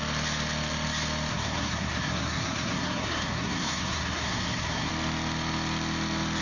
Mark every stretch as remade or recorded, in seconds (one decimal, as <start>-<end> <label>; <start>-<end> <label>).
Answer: 0.0-1.3 recorded; 1.3-4.9 remade; 4.9-6.4 recorded